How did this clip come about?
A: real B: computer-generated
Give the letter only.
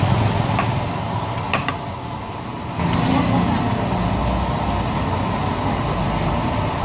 A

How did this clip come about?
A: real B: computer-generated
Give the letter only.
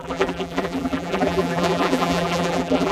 B